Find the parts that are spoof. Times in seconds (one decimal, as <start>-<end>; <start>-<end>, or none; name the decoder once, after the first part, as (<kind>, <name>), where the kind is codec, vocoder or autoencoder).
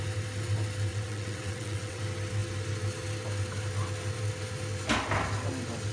0.9-2.0 (vocoder, WaveNeXt)